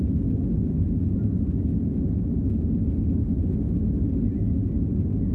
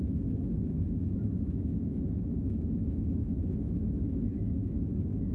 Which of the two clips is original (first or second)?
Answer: first